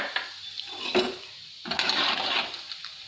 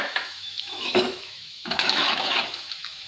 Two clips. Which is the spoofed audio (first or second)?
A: second